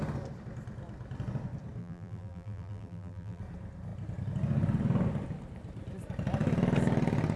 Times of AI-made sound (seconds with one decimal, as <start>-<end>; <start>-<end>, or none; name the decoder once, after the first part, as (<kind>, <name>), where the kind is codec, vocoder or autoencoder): 1.8-3.4 (vocoder, BigVGAN v2)